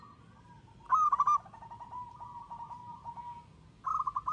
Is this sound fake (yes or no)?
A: no